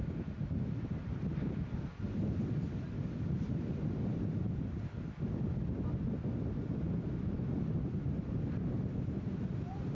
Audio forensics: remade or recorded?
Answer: recorded